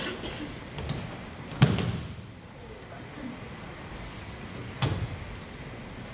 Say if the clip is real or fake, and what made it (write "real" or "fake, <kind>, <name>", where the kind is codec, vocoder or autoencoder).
real